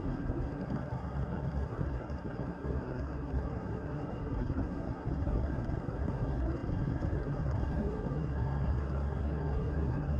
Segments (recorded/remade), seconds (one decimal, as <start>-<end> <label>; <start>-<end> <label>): 0.0-10.2 remade